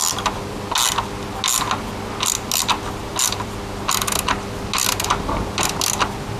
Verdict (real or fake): real